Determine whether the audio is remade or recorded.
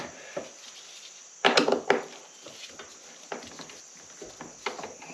recorded